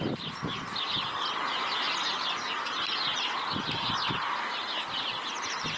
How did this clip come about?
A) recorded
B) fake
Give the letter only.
A